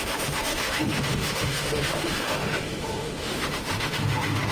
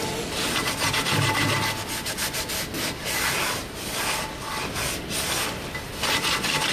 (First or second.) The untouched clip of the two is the second